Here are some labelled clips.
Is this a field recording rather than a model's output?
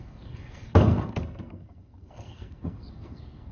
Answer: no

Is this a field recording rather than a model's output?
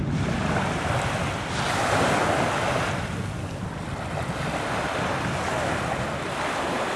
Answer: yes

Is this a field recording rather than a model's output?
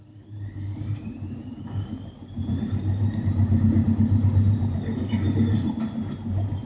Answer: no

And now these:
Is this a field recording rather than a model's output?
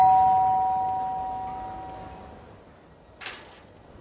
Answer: yes